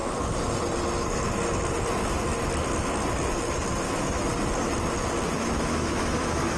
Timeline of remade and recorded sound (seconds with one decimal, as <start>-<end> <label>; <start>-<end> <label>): 0.0-3.8 recorded; 3.8-4.3 remade; 4.3-5.3 recorded; 5.3-6.6 remade